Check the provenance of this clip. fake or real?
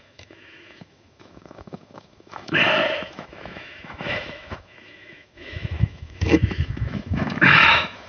fake